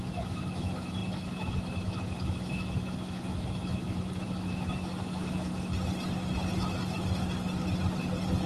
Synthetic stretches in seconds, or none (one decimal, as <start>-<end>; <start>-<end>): 0.0-5.5